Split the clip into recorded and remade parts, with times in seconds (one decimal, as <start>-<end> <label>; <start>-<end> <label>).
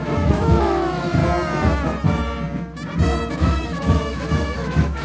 0.0-1.2 remade; 1.2-3.3 recorded; 3.3-5.0 remade